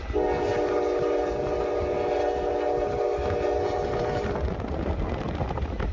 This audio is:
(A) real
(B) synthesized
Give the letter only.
A